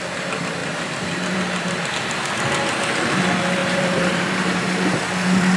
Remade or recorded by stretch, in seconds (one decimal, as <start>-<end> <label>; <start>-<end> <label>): 0.0-0.6 recorded; 0.6-1.9 remade; 1.9-3.6 recorded; 3.6-5.0 remade; 5.0-5.6 recorded